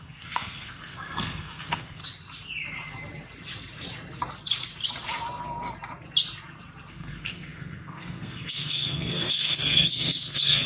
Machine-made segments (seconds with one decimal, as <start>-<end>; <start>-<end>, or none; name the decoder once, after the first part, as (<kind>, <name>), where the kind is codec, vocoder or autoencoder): 0.0-2.0 (codec, SNAC); 6.9-10.7